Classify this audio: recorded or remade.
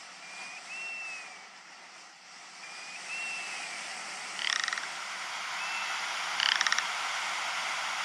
recorded